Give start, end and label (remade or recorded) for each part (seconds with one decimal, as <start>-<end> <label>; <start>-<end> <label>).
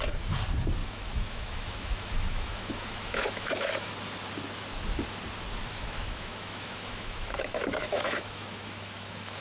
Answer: 0.0-0.8 recorded; 0.8-3.9 remade; 3.9-5.6 recorded; 5.6-9.4 remade